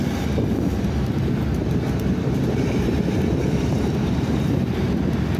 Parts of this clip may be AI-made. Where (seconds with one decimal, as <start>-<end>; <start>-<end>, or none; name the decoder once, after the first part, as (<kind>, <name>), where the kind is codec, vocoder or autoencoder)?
1.6-4.8 (vocoder, BigVGAN v2)